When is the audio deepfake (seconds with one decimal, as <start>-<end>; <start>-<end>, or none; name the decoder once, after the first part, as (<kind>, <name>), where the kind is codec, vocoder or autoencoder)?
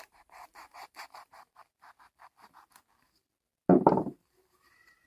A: 0.0-1.6 (vocoder, BigVGAN v2); 3.8-5.1